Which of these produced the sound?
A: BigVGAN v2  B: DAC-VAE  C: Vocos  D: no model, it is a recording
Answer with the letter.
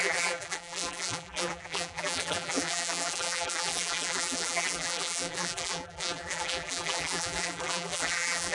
A